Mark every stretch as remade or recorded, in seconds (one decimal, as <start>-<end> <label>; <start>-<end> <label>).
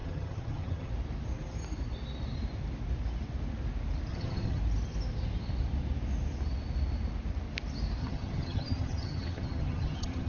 0.0-0.9 remade; 0.9-4.1 recorded; 4.1-4.6 remade; 4.6-8.0 recorded; 8.0-10.3 remade